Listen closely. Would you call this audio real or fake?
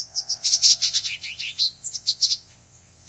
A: fake